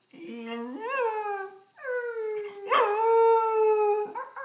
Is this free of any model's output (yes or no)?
yes